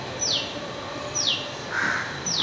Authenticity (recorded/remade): remade